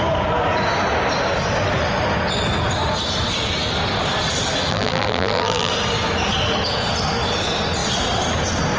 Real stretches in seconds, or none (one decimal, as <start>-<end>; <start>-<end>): 0.0-4.7; 5.7-8.8